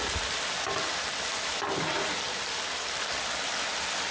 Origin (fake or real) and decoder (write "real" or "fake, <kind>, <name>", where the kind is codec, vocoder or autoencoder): real